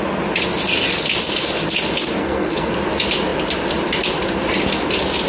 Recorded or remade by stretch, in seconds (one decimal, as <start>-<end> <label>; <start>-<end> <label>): 0.0-2.2 recorded; 2.2-2.7 remade; 2.7-5.3 recorded